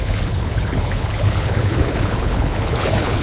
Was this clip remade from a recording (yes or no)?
yes